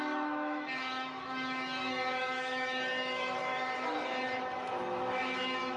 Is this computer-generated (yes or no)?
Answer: yes